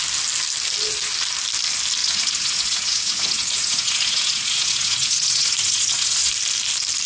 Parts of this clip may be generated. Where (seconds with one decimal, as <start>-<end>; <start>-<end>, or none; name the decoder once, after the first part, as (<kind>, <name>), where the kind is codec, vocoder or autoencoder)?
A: 2.0-6.3 (vocoder, Vocos)